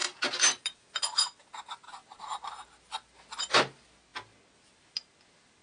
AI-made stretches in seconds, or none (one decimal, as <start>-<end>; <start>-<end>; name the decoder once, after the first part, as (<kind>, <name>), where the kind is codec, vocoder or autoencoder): none